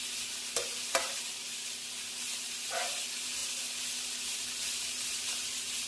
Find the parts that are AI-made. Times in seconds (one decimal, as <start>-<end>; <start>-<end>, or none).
none